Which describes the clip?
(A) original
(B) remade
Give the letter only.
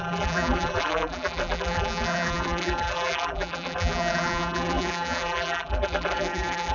B